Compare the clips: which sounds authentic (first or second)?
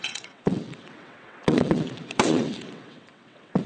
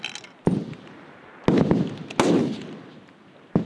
second